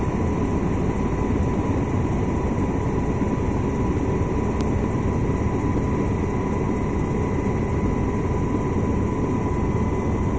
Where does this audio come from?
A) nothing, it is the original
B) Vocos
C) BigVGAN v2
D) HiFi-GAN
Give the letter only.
A